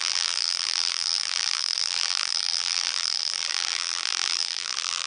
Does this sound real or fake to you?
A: fake